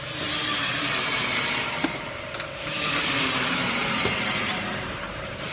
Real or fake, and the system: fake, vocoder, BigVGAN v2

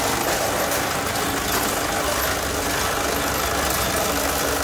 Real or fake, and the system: real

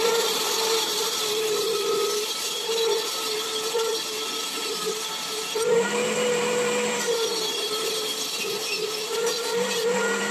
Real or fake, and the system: fake, vocoder, BigVGAN v2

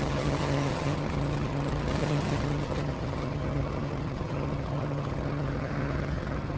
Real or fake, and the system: fake, vocoder, HiFi-GAN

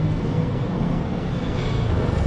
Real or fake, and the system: fake, codec, SNAC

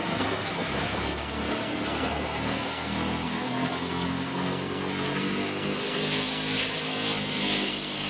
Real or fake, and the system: fake, codec, SNAC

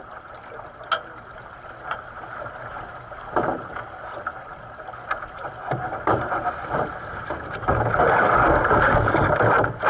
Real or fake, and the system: real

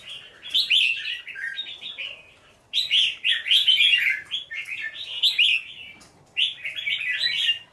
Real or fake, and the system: real